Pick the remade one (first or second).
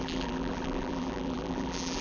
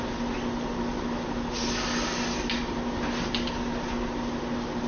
first